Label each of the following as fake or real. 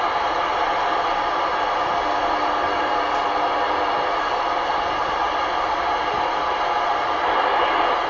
real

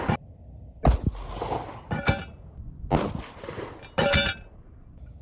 real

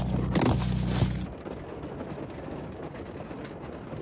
real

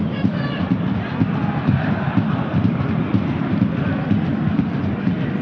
fake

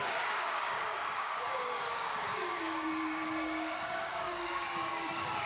fake